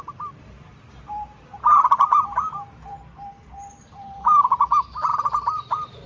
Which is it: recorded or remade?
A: remade